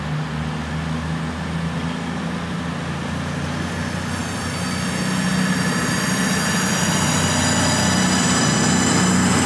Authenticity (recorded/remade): recorded